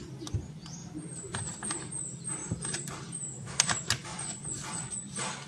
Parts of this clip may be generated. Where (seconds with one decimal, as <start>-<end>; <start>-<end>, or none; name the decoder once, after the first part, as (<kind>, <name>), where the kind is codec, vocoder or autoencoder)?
4.1-4.9 (vocoder, Vocos)